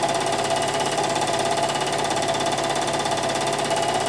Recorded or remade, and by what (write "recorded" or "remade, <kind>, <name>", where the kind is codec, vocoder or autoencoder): recorded